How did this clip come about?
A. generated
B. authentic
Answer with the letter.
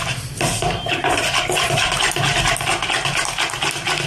B